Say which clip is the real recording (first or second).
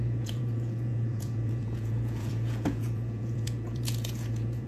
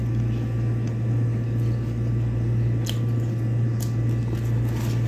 second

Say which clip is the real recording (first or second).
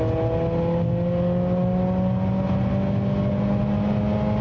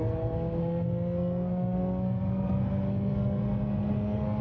first